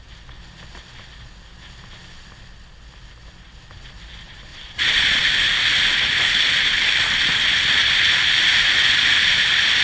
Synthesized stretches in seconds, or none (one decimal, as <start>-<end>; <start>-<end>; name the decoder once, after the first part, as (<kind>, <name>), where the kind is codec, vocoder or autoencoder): 4.5-5.3 (vocoder, Vocos)